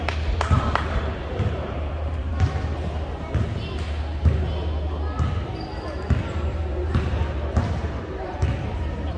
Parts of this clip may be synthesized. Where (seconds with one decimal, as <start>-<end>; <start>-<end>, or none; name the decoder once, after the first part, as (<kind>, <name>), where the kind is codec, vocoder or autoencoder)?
0.0-2.3 (vocoder, BigVGAN v2); 6.5-9.2